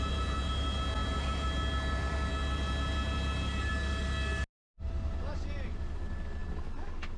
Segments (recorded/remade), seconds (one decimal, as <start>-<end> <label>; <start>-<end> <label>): 0.0-7.2 recorded

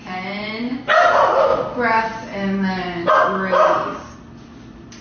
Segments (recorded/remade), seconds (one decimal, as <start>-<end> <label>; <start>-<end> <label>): 0.0-5.0 recorded